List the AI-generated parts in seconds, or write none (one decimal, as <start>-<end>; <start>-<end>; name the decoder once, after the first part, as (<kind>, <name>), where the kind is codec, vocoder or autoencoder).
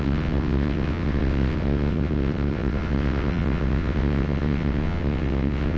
0.0-5.8 (vocoder, WaveNeXt)